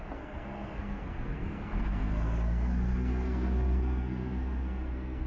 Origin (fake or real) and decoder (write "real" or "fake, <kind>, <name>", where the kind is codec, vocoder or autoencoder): fake, codec, SNAC